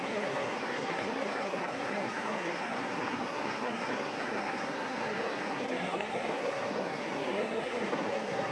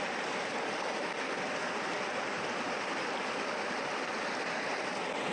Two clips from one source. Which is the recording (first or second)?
second